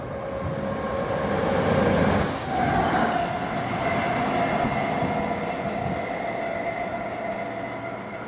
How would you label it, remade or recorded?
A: recorded